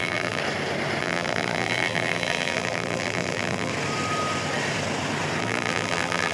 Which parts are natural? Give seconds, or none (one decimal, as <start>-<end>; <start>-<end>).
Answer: 0.4-1.0; 3.7-5.4